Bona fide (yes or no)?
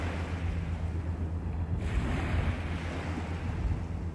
yes